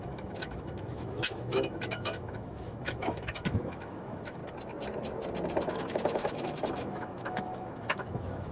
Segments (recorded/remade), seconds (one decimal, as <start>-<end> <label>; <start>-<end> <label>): 0.0-4.4 remade; 4.4-5.7 recorded; 5.7-8.5 remade